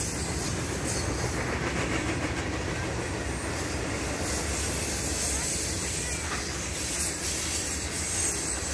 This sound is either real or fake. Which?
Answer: real